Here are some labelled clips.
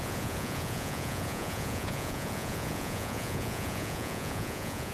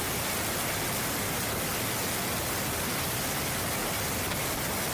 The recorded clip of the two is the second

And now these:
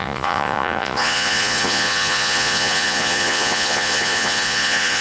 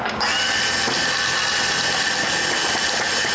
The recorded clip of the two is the second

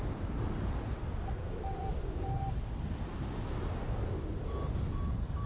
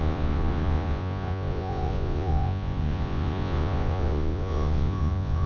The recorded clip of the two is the first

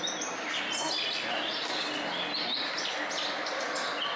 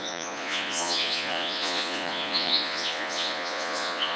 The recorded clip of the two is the first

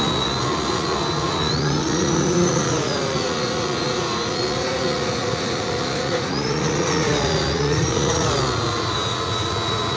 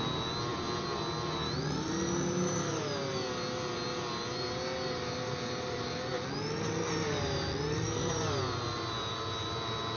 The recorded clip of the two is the second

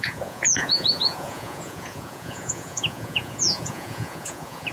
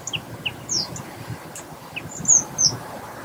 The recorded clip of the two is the second